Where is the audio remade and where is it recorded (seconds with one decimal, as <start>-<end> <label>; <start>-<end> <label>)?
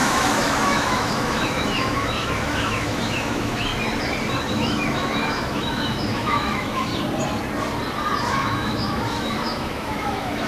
0.0-3.7 remade; 3.7-4.5 recorded; 4.5-6.9 remade; 6.9-8.3 recorded; 8.3-10.5 remade